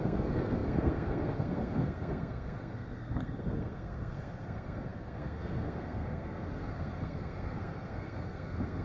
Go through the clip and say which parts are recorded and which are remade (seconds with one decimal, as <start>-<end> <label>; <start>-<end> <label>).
0.0-8.8 remade